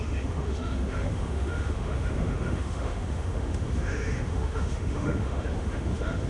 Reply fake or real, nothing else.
fake